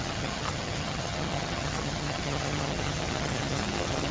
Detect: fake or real fake